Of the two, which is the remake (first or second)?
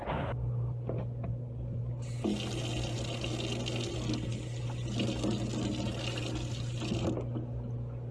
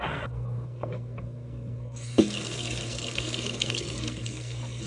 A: second